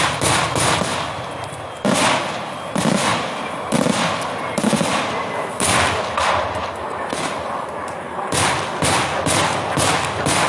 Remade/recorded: recorded